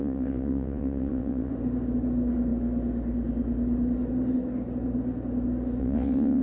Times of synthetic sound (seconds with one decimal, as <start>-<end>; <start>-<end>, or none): 0.0-1.5; 5.8-6.4